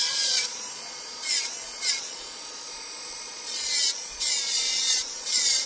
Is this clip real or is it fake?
fake